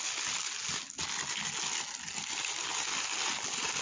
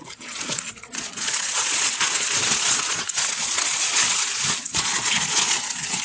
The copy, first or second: second